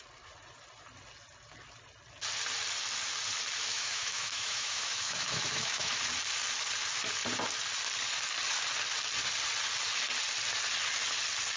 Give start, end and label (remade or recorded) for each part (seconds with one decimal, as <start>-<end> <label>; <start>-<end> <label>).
0.0-3.7 recorded; 3.7-5.9 remade; 5.9-11.6 recorded